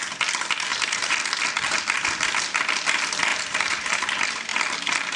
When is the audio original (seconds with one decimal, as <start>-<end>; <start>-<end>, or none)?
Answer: 0.0-0.7; 1.4-3.3; 4.0-5.2